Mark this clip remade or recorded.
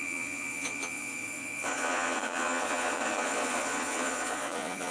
remade